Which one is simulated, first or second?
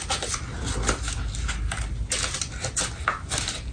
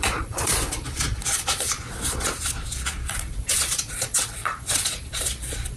second